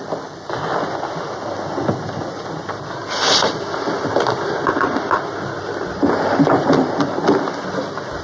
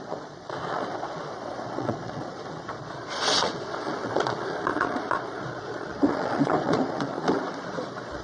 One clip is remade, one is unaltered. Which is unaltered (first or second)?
first